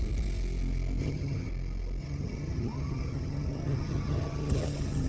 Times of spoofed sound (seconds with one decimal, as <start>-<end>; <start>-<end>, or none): 1.0-1.5; 2.0-5.1